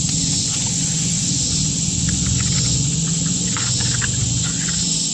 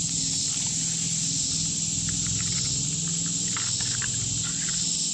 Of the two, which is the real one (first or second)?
second